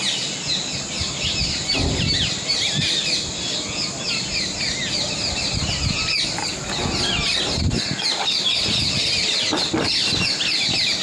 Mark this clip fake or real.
real